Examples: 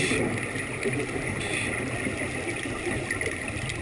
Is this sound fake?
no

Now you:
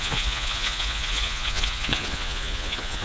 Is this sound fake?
yes